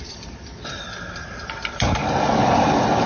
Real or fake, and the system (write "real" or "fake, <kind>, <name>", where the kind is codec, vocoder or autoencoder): real